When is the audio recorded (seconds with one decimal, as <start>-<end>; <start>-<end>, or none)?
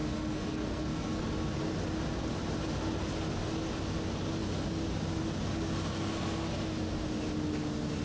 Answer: 1.2-8.0